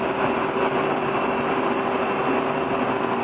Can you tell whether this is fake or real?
real